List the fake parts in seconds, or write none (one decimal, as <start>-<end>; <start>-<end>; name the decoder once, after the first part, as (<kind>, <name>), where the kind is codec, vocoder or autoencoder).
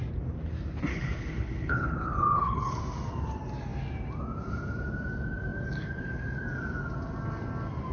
0.9-2.8 (codec, HILCodec)